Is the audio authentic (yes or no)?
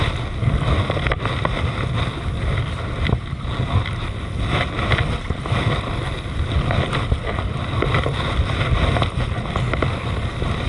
yes